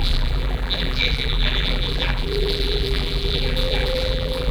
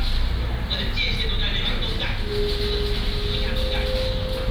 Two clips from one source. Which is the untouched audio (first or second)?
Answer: second